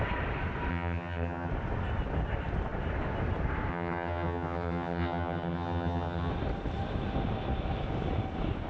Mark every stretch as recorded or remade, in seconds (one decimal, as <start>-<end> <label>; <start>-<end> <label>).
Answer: 0.0-0.7 recorded; 0.7-1.5 remade; 1.5-3.7 recorded; 3.7-6.3 remade; 6.3-8.7 recorded